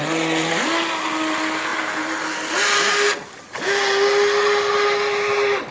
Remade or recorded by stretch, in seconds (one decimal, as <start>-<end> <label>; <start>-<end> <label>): 0.0-5.7 recorded